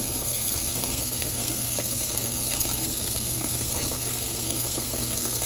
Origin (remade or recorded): remade